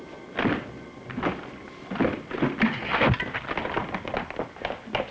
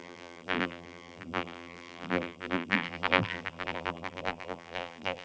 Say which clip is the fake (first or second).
second